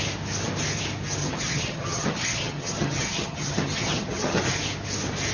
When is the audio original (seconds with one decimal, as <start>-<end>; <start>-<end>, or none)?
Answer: 0.0-1.2; 4.4-5.3